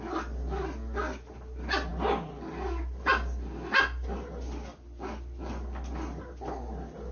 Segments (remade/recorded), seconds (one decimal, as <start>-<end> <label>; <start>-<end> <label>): 0.0-7.1 recorded